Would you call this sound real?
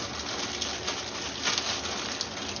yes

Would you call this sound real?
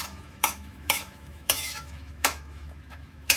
no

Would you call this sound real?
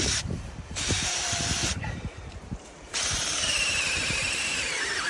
no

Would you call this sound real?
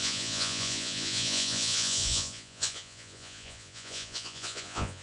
no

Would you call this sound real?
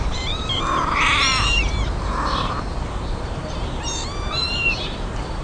no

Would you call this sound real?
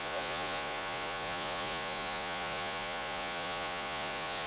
no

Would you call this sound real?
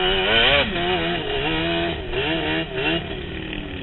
yes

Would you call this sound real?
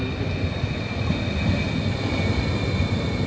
yes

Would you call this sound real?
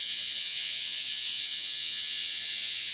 no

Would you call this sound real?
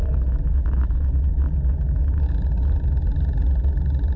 yes